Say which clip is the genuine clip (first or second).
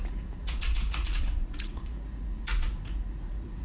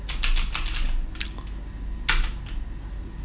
second